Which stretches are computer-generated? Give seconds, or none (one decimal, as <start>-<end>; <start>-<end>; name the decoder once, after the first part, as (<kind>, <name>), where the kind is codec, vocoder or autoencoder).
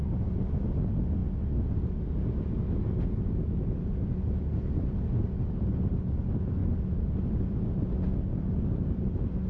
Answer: none